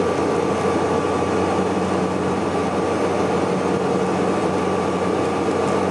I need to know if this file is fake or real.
real